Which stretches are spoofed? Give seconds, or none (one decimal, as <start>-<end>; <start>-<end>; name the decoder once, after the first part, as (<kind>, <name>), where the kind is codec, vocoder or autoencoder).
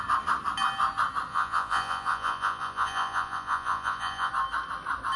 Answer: 1.3-4.3 (vocoder, Vocos)